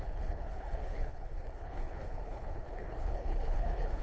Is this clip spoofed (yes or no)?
yes